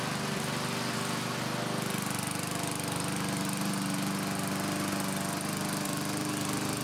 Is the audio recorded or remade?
recorded